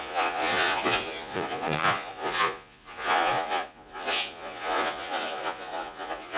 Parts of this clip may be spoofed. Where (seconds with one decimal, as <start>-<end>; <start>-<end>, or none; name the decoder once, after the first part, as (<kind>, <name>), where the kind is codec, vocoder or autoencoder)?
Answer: 0.0-6.4 (vocoder, Vocos)